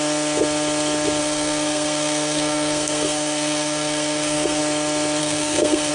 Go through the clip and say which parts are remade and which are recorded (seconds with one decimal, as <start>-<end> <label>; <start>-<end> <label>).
0.0-1.2 recorded; 1.2-4.6 remade; 4.6-5.2 recorded; 5.2-5.9 remade